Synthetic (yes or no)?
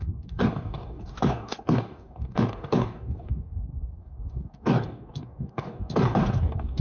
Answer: yes